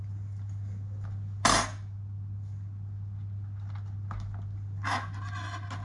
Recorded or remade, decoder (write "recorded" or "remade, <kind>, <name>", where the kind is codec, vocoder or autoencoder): recorded